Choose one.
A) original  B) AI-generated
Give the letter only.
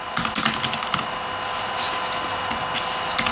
A